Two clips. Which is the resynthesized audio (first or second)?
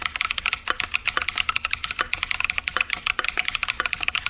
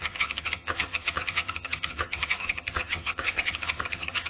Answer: second